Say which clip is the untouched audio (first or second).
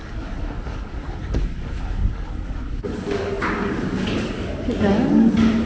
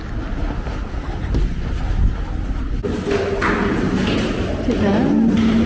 second